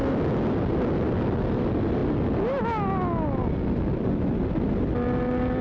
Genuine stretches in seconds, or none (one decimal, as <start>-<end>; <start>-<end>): 0.0-5.6